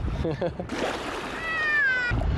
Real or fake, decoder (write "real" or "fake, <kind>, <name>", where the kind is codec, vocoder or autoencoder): real